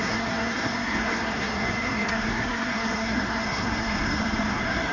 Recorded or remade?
remade